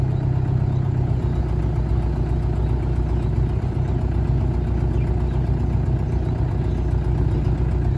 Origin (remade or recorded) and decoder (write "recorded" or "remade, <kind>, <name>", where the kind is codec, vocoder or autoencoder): recorded